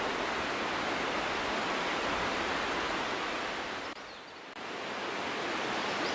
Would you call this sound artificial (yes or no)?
no